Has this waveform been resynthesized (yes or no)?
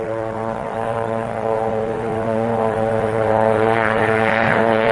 yes